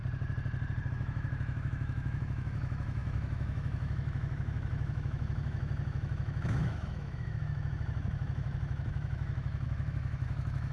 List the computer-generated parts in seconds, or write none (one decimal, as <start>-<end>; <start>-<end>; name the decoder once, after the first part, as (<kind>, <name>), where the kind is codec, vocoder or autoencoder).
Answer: 0.9-10.7 (autoencoder, DAC-VAE)